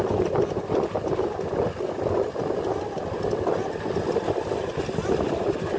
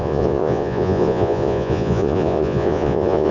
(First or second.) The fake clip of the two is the second